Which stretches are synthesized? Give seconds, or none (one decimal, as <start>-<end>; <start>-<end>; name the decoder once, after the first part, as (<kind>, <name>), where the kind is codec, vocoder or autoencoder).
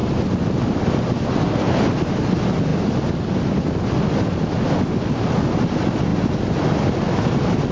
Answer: 0.0-1.2 (vocoder, BigVGAN v2); 2.7-3.7; 6.1-7.1